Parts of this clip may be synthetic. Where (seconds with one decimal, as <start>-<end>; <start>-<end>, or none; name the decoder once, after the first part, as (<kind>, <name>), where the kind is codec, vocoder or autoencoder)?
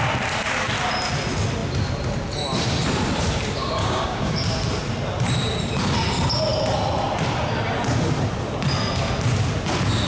3.8-4.3 (codec, DAC)